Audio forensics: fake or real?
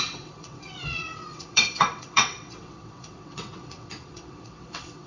fake